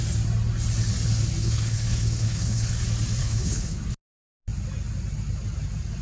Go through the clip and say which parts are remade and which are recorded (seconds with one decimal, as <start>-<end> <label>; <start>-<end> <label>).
0.0-1.4 recorded; 1.4-2.7 remade; 2.7-3.2 recorded; 3.2-3.8 remade; 3.8-6.0 recorded